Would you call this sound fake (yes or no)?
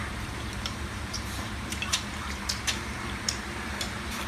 yes